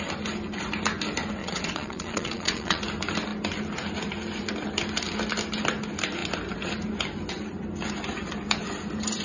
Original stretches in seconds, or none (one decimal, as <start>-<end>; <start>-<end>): 0.0-1.4; 2.8-9.2